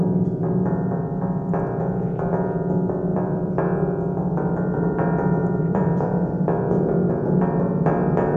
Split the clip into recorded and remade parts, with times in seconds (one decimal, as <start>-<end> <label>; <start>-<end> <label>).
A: 0.0-3.1 recorded; 3.1-3.6 remade; 3.6-5.4 recorded; 5.4-7.1 remade; 7.1-8.4 recorded